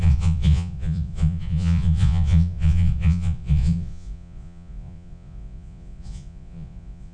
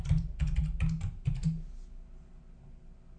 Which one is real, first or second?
second